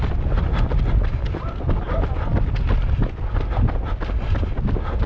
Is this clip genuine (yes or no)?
yes